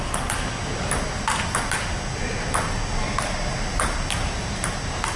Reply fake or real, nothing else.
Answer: real